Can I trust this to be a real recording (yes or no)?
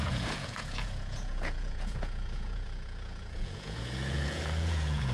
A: no